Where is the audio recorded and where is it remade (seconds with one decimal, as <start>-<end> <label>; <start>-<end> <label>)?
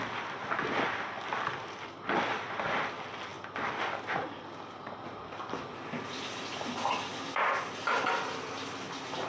0.0-9.3 recorded